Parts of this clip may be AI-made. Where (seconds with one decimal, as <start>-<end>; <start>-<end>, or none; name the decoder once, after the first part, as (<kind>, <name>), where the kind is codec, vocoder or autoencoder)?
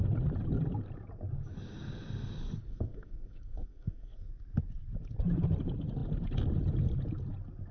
2.7-4.3 (codec, SNAC)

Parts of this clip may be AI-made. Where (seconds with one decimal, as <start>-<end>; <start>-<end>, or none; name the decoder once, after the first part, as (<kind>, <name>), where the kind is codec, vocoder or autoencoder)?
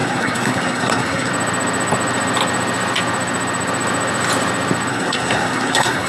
0.0-1.3 (codec, SNAC); 4.9-6.1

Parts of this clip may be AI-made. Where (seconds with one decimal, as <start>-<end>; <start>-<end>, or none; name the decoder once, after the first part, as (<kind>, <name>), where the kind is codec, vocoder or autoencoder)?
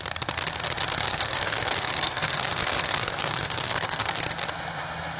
1.1-4.2 (codec, SNAC)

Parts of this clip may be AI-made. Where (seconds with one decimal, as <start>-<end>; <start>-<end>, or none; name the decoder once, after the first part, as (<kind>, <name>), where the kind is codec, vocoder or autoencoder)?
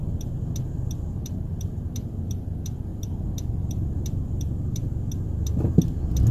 none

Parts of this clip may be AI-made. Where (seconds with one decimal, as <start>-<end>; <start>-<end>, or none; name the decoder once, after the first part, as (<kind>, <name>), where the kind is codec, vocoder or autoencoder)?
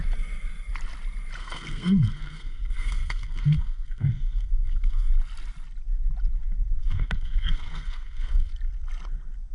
1.4-5.1 (codec, SNAC); 6.8-8.5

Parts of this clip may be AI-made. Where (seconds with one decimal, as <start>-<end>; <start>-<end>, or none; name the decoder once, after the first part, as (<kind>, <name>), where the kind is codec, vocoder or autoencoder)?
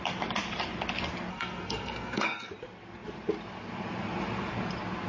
1.3-2.5 (codec, SNAC)